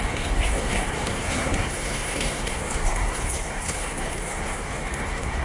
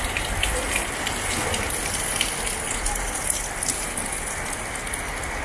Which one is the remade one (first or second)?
first